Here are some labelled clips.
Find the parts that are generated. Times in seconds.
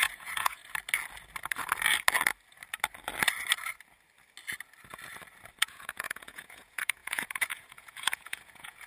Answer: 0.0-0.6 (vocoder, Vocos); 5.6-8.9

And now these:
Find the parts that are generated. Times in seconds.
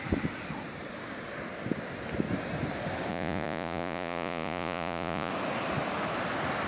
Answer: 3.1-5.3 (vocoder, Vocos)